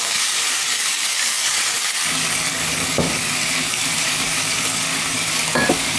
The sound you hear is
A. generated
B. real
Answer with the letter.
A